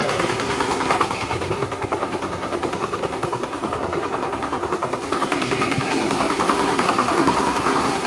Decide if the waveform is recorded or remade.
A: remade